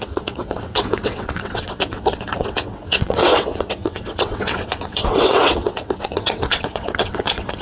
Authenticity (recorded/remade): remade